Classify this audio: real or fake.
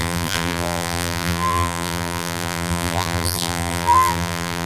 fake